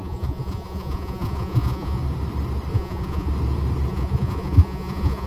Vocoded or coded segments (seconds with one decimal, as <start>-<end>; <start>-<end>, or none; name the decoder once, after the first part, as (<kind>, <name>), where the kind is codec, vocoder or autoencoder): 0.0-2.0 (vocoder, Vocos); 2.7-3.3; 3.9-5.3